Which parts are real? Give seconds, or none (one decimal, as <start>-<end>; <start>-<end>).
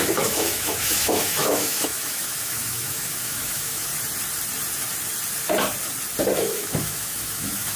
3.9-6.4